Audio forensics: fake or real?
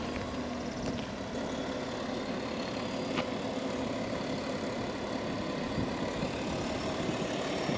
real